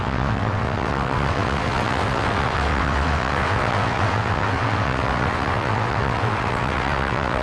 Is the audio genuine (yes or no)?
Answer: no